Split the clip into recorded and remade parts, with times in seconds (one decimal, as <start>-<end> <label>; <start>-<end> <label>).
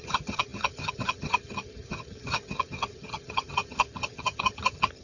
0.0-5.0 remade